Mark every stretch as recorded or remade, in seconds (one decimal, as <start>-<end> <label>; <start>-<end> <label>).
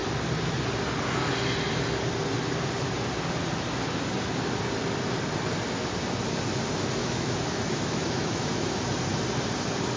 0.0-7.0 recorded; 7.0-8.8 remade; 8.8-10.0 recorded